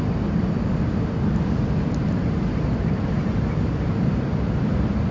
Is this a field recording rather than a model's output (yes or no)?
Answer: yes